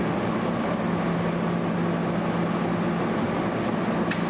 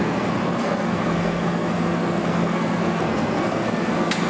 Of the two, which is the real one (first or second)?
first